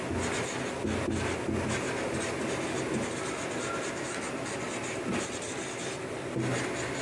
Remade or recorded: recorded